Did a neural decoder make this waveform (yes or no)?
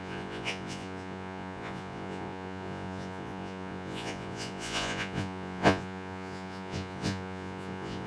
yes